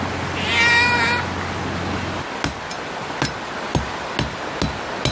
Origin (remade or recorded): recorded